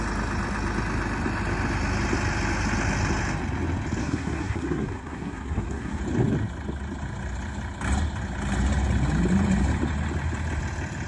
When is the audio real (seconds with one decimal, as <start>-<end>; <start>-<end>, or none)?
0.0-4.0; 6.0-11.1